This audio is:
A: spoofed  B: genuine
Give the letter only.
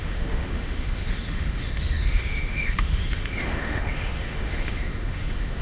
A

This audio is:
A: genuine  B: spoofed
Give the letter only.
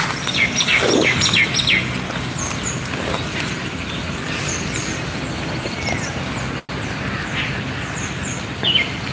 A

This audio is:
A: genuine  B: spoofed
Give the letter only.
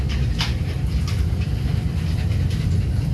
A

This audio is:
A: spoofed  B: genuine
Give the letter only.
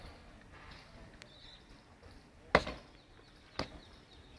B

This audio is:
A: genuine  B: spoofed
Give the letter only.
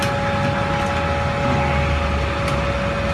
A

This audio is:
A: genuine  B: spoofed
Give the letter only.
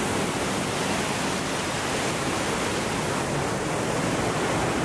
A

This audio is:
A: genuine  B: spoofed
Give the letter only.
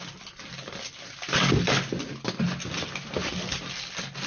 A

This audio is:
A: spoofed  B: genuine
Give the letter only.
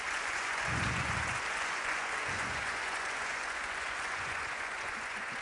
A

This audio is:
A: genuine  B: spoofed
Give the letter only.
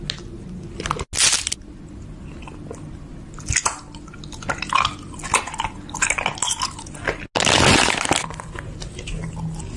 A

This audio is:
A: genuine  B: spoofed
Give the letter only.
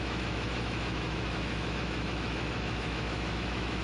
B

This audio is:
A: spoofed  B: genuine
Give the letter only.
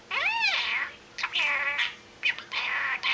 B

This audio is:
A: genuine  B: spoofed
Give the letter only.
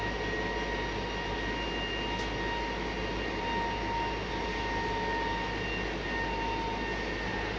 A